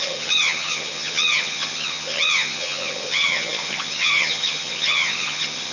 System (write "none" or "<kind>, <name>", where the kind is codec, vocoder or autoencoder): vocoder, HiFi-GAN